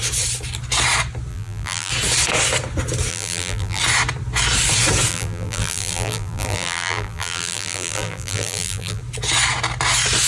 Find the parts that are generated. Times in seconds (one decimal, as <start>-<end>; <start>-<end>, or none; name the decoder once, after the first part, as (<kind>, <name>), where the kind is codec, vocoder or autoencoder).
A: 1.3-1.9 (vocoder, BigVGAN v2); 3.1-3.8; 5.1-9.0